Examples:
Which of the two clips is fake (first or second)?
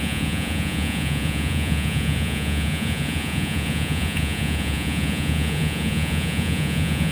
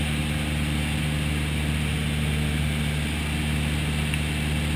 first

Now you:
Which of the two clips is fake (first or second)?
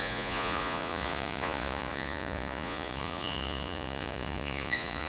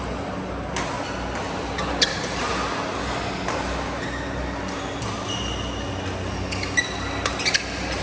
first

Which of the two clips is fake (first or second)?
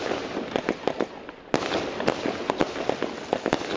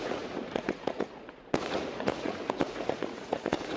second